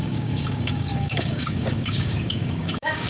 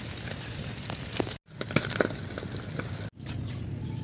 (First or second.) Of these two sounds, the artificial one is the first